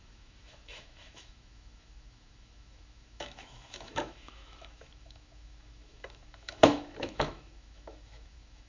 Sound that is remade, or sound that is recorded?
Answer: remade